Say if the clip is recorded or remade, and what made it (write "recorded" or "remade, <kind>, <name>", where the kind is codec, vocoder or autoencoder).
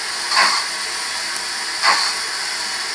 recorded